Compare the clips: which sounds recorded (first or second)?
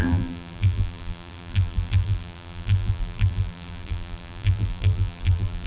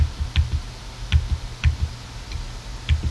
second